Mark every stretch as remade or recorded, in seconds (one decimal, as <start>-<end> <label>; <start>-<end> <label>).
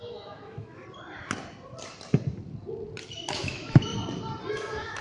0.0-0.8 remade; 0.8-3.1 recorded; 3.1-3.9 remade; 3.9-4.5 recorded; 4.5-5.0 remade